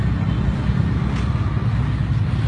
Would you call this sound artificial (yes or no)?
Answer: no